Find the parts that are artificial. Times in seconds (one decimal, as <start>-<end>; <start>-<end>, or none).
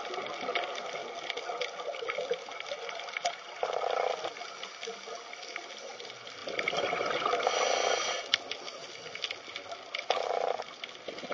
none